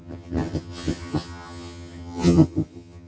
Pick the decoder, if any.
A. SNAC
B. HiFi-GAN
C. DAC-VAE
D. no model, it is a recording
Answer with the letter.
B